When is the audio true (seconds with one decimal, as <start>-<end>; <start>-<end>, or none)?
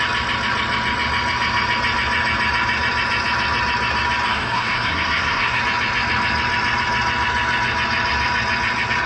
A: 0.0-4.3; 5.6-9.1